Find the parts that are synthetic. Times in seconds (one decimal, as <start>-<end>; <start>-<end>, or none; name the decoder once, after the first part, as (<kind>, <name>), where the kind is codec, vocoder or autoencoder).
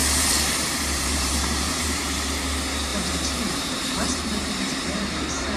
0.0-2.0 (vocoder, BigVGAN v2); 2.9-5.6